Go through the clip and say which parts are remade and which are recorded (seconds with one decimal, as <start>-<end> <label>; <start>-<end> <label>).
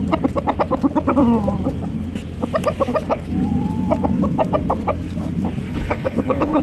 0.0-5.7 recorded; 5.7-6.6 remade